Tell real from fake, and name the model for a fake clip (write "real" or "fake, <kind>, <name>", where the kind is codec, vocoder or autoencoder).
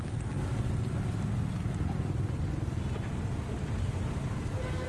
real